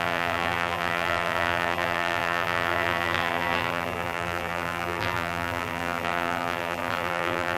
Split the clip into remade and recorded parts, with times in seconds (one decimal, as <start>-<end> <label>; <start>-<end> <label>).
0.0-7.6 remade